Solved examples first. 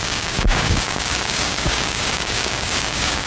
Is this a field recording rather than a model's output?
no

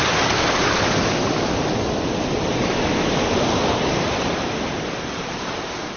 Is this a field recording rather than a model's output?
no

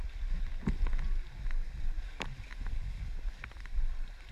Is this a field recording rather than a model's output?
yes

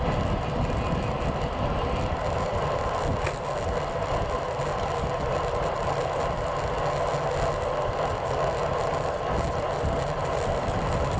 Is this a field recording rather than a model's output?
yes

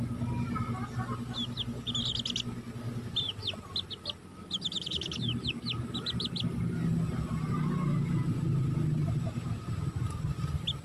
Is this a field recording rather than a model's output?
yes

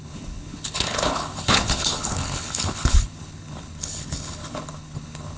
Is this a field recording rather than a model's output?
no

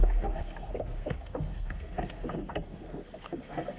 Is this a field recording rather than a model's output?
no